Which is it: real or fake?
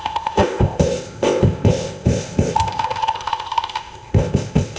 fake